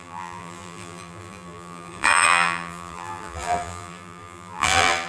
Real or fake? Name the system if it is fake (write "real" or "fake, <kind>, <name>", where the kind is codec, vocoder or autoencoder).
fake, vocoder, BigVGAN v2